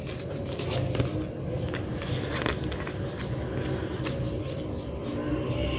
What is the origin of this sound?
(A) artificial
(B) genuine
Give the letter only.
B